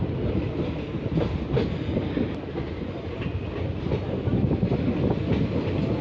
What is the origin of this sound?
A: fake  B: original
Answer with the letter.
B